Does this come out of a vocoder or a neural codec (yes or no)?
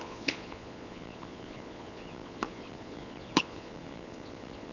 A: yes